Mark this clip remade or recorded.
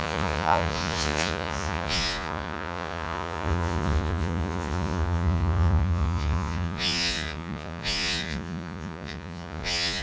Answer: remade